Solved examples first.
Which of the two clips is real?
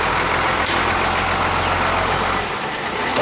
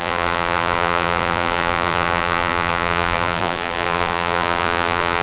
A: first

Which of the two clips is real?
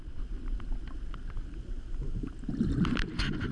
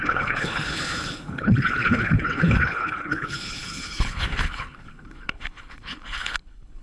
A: first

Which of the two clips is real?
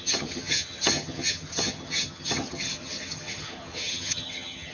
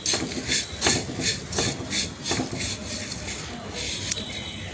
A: second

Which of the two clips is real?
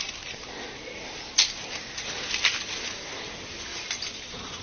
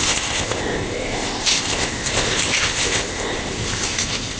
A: first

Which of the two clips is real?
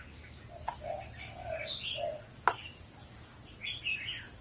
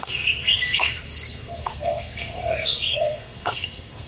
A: first